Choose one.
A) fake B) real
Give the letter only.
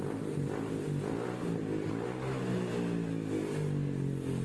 B